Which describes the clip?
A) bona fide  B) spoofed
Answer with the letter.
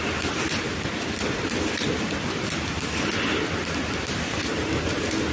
A